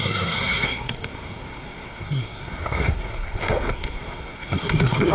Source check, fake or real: fake